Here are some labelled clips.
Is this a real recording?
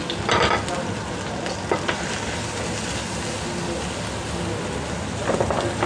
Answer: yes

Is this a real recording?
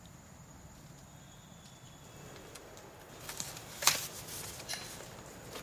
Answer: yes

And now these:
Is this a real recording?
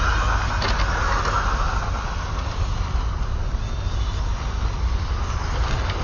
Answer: yes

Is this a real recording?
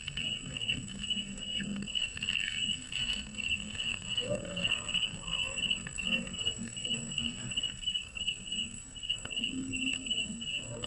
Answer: no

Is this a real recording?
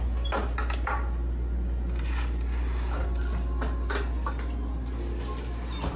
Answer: yes